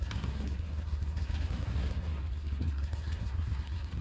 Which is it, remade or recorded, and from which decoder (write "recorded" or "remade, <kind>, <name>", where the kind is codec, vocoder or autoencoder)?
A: remade, codec, SNAC